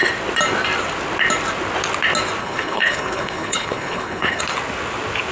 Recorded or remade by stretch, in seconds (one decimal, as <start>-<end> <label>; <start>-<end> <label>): 0.0-2.4 recorded; 2.4-4.4 remade; 4.4-5.3 recorded